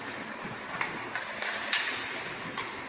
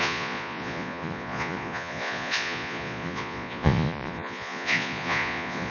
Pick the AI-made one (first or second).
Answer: second